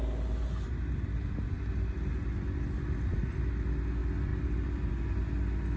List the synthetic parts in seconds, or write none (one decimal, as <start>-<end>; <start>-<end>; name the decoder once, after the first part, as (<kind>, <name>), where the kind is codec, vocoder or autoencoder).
4.3-4.9 (vocoder, BigVGAN v2)

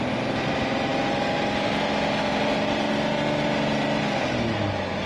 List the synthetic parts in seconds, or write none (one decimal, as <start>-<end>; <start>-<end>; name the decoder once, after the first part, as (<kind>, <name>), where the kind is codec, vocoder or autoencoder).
none

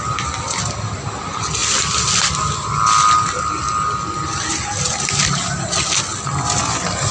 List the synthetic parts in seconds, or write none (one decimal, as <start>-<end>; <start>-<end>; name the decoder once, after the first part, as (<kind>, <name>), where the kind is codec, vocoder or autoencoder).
none

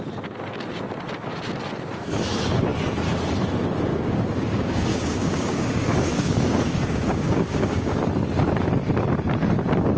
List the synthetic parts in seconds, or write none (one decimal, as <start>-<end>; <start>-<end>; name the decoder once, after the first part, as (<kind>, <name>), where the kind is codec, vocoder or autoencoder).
3.9-8.0 (codec, DAC)

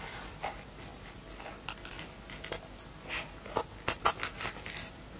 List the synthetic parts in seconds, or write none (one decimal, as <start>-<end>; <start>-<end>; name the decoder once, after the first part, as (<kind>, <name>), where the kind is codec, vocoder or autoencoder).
none

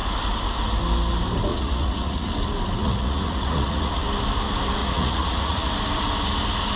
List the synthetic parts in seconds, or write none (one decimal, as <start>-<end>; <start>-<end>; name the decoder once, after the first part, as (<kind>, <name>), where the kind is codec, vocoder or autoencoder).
1.5-2.3 (vocoder, Vocos); 2.8-4.0; 4.8-5.7

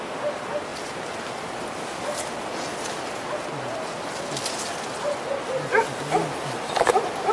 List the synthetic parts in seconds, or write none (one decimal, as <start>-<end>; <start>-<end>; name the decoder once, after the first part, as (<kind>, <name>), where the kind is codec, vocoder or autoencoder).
none